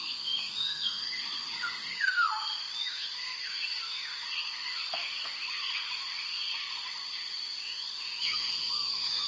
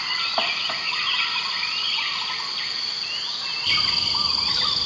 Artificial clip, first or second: first